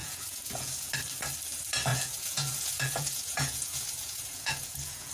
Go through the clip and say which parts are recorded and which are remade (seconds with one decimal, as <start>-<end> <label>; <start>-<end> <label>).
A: 0.0-0.9 remade; 0.9-1.9 recorded; 1.9-5.1 remade